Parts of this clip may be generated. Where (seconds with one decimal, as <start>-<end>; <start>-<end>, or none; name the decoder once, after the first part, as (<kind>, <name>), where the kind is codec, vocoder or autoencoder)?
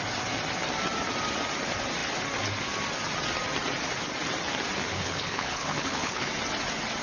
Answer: 4.9-6.3 (codec, HILCodec)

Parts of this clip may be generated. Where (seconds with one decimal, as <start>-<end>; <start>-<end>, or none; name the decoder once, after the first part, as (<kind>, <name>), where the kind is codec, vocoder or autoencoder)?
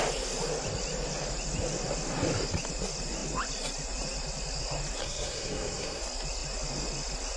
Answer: 5.0-6.0 (codec, SNAC)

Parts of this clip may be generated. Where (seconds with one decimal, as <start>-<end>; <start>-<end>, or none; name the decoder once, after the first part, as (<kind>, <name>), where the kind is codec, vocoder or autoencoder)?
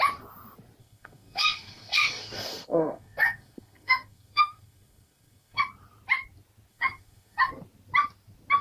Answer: 0.8-5.6 (codec, SNAC); 6.7-7.5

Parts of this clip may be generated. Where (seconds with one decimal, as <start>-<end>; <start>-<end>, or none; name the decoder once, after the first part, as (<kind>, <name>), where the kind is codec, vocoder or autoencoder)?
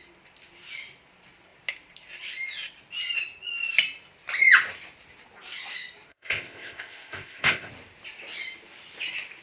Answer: 6.1-7.7 (codec, ZipCodec)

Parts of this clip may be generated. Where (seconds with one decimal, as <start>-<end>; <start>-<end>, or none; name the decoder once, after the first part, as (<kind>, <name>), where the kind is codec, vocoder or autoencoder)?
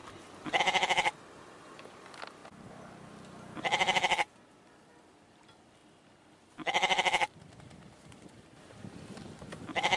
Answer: 0.0-2.4 (vocoder, BigVGAN v2); 3.1-10.0